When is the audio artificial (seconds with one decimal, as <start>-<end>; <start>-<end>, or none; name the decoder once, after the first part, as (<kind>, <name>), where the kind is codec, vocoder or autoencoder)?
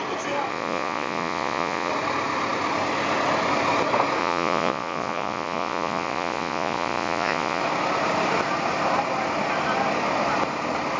0.5-1.9 (vocoder, Vocos); 4.2-7.6